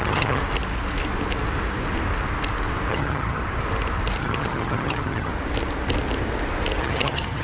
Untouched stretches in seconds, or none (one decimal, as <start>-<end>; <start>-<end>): 0.4-2.9; 3.4-4.2; 5.3-6.8